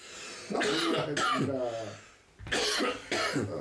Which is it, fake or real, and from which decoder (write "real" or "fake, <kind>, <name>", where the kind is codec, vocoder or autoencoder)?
real